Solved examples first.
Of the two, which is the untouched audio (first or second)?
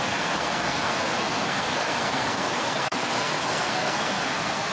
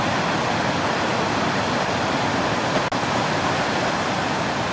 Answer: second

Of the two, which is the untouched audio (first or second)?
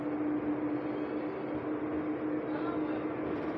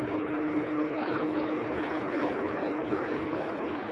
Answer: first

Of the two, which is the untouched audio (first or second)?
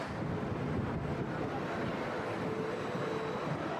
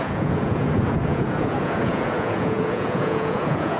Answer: first